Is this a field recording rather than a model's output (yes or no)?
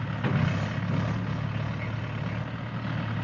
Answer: yes